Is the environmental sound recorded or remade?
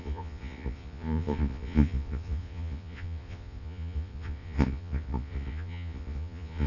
remade